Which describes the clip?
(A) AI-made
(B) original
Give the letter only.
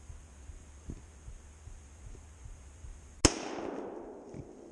B